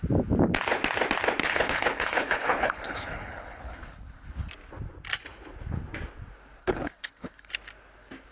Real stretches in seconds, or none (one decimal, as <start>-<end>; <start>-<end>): 0.0-1.4; 4.5-6.6; 7.5-8.3